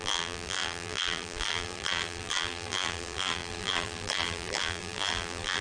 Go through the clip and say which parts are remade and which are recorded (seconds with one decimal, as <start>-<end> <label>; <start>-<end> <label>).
0.0-5.6 remade